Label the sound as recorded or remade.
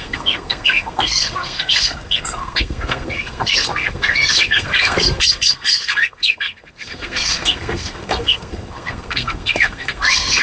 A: remade